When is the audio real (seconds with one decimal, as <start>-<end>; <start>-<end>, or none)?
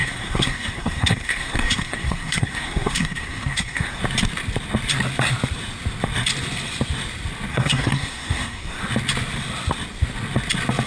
4.0-7.5; 8.8-10.9